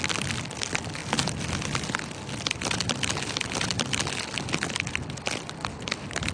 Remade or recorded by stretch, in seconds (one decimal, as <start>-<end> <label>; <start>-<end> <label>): 0.0-6.3 recorded